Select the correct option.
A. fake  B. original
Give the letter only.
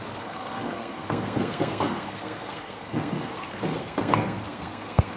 A